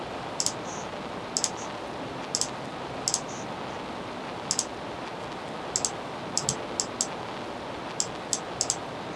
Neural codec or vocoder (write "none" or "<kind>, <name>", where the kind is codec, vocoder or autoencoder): none